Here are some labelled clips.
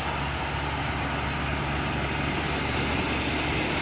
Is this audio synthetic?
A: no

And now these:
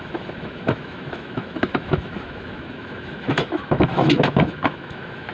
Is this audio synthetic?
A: yes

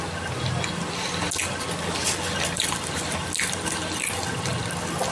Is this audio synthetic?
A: no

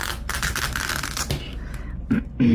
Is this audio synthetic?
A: no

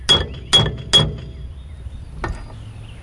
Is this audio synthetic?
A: no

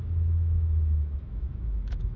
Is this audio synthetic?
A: yes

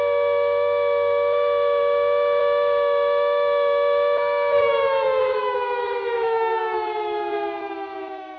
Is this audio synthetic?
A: yes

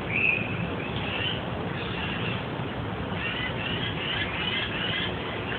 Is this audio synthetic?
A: no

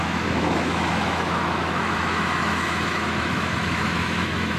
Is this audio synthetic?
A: yes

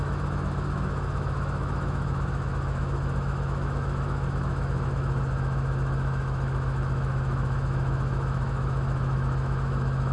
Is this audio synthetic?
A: yes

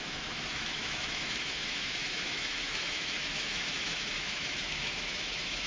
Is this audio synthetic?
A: yes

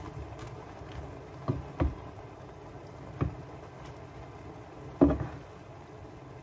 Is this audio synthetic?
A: no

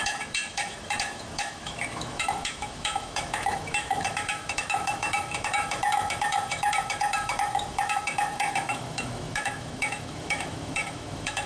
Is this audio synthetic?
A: yes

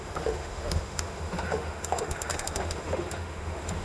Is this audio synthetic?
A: yes